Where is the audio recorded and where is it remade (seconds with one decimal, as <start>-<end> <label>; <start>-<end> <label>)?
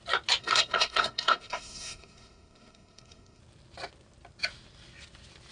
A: 0.0-0.4 recorded; 0.4-3.4 remade; 3.4-5.5 recorded